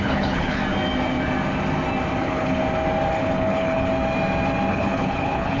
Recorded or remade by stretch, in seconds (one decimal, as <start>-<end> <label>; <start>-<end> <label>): 0.0-0.6 remade; 0.6-2.2 recorded; 2.2-2.6 remade; 2.6-3.1 recorded; 3.1-3.9 remade; 3.9-4.7 recorded; 4.7-5.6 remade

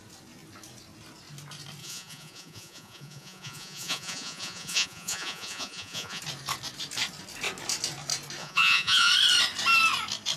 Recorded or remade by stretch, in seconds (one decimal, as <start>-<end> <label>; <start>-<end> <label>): 0.0-1.8 recorded; 1.8-6.2 remade; 6.2-8.4 recorded; 8.4-9.1 remade; 9.1-10.4 recorded

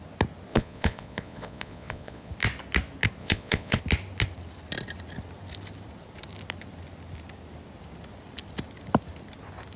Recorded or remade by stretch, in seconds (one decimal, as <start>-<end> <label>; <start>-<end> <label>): 0.0-0.5 recorded; 0.5-2.3 remade; 2.3-3.2 recorded; 3.2-3.8 remade; 3.8-9.8 recorded

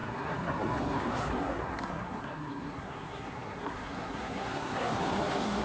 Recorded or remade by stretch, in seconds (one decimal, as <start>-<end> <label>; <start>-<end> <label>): 0.0-5.6 remade

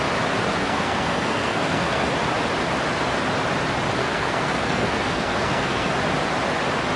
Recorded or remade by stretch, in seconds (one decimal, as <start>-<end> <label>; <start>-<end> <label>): 0.0-0.6 recorded; 0.6-2.1 remade; 2.1-4.0 recorded; 4.0-5.9 remade; 5.9-7.0 recorded